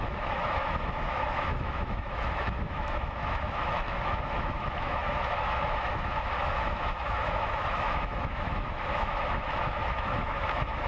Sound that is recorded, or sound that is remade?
remade